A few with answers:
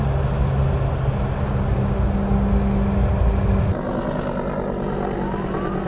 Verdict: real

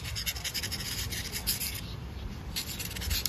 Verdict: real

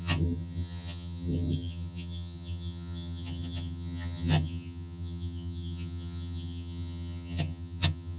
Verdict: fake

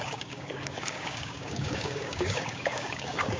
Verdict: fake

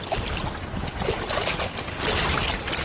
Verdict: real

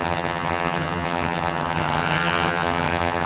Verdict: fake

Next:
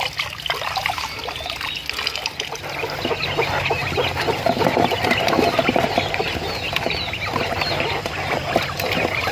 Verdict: real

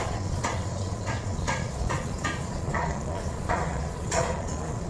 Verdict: fake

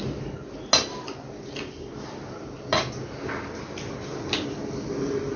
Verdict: real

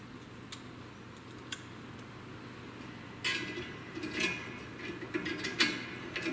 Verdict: real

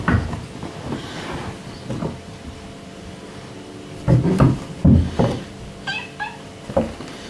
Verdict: real